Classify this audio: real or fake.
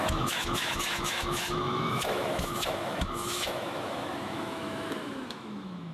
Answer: fake